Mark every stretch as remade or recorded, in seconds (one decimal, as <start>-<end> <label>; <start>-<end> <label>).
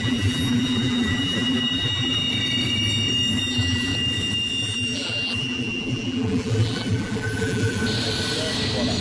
0.0-2.2 remade; 2.2-3.4 recorded; 3.4-3.9 remade; 3.9-4.6 recorded; 4.6-7.8 remade; 7.8-9.0 recorded